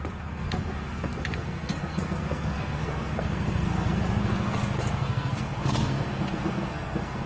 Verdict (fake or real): fake